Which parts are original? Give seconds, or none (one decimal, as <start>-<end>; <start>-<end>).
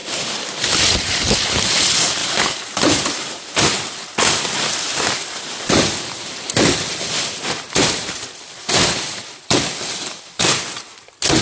0.0-11.4